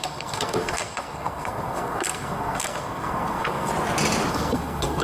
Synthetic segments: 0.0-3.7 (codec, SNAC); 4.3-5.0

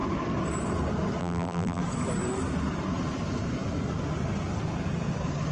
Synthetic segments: 1.2-1.8 (vocoder, BigVGAN v2)

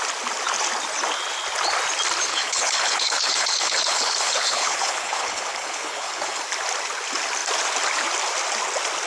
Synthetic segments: 2.3-6.4 (codec, HILCodec)

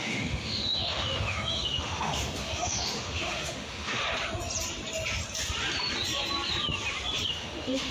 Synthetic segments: 0.0-4.0 (autoencoder, DAC-VAE); 7.3-7.9

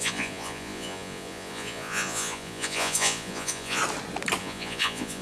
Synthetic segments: 0.0-3.8 (vocoder, Vocos); 4.4-5.2

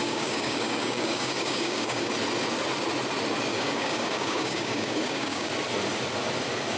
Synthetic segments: 0.0-2.1 (codec, DAC); 3.5-5.5